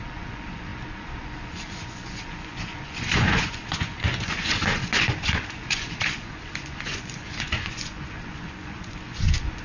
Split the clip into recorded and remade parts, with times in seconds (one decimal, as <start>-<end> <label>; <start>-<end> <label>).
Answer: 0.0-9.6 remade